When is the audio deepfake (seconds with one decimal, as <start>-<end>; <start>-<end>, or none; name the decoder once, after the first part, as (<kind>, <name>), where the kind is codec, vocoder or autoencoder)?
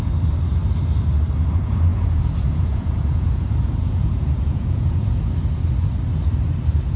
1.9-5.2 (vocoder, Vocos)